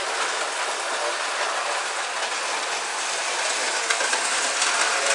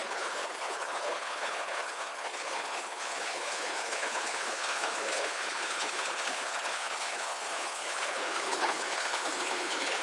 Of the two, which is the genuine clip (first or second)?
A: first